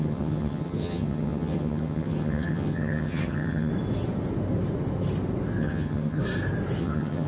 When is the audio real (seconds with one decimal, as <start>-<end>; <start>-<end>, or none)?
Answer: 3.7-5.6; 6.2-6.8